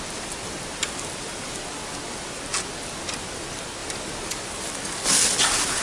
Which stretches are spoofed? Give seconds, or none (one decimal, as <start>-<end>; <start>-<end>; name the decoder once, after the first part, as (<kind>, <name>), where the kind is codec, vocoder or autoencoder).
none